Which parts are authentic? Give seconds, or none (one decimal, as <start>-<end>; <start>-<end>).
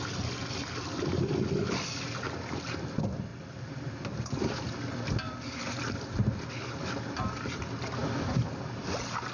0.0-3.3; 6.5-9.3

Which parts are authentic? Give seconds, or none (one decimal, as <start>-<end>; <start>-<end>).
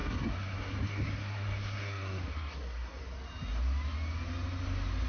3.0-5.1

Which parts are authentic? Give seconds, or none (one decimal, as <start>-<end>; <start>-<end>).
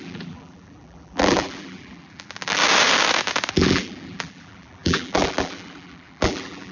2.6-3.5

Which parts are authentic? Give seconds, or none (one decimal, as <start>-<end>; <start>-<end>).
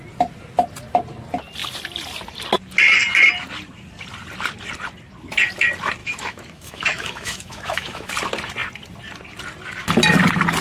0.0-6.0; 8.1-10.6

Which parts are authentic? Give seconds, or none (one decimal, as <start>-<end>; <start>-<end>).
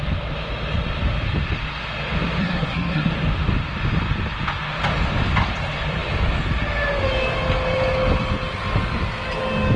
0.0-2.4; 3.1-9.8